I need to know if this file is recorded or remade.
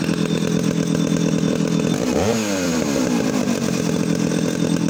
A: recorded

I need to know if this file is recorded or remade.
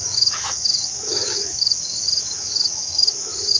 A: remade